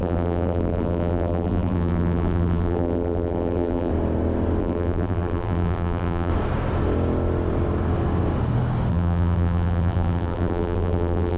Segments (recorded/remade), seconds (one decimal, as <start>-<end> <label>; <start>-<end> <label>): 0.0-3.9 remade; 3.9-4.6 recorded; 4.6-6.3 remade; 6.3-8.9 recorded; 8.9-11.4 remade